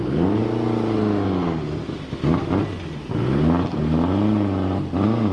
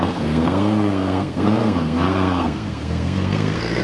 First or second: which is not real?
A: second